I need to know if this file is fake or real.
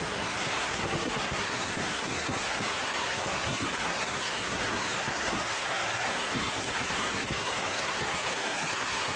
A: fake